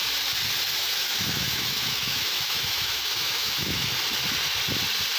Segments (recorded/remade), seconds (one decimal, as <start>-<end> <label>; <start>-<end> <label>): 0.0-0.8 recorded; 0.8-3.9 remade; 3.9-5.2 recorded